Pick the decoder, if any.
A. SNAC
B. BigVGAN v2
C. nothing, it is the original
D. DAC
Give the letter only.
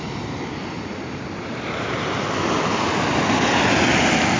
C